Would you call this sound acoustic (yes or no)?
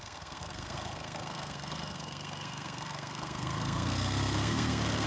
no